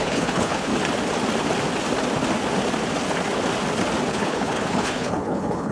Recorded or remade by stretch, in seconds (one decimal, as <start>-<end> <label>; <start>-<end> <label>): 0.0-0.7 remade; 0.7-4.1 recorded; 4.1-5.7 remade